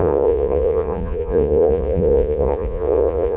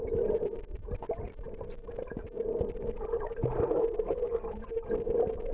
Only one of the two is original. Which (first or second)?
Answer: second